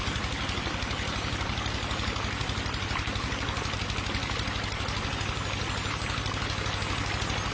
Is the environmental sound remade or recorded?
recorded